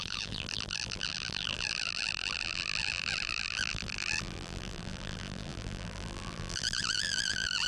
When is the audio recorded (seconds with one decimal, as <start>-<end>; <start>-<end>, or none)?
none

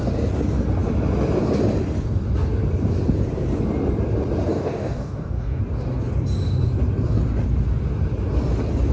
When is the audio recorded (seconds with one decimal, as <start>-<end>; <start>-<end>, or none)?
0.0-4.5; 5.6-8.9

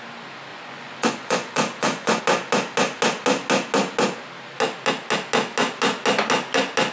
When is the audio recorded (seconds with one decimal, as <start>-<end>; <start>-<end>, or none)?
0.0-0.5; 2.2-6.9

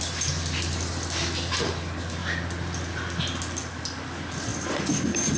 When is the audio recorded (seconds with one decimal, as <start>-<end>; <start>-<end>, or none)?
0.0-5.4

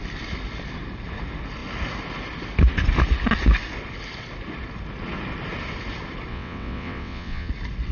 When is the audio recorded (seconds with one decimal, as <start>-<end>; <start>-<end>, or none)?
0.0-6.3; 7.5-7.9

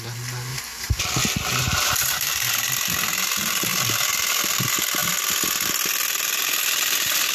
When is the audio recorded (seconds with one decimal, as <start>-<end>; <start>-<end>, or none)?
0.0-0.5; 1.0-1.6; 2.7-7.3

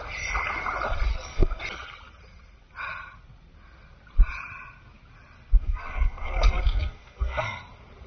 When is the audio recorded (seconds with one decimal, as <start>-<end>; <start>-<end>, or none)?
0.0-1.1; 1.6-5.6; 7.6-8.1